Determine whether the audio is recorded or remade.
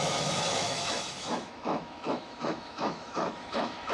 remade